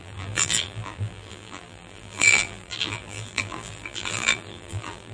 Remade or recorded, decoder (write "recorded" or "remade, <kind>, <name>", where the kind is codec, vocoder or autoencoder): remade, vocoder, BigVGAN v2